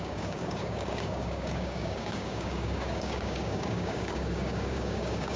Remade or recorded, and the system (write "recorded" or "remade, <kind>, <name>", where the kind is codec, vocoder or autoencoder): remade, codec, DAC